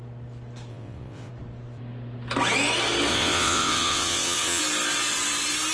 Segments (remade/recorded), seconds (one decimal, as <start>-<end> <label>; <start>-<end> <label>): 0.0-0.7 recorded; 0.7-1.3 remade; 1.3-3.1 recorded; 3.1-4.6 remade; 4.6-5.7 recorded